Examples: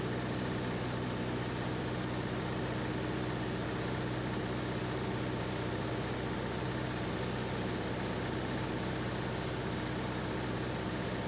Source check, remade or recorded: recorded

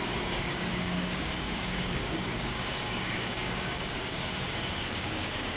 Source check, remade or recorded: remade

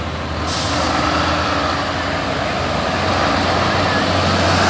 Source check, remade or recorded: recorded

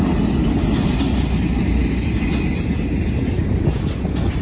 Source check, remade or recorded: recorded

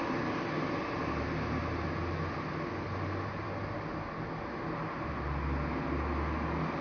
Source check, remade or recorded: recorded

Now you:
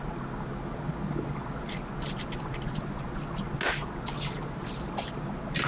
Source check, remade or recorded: recorded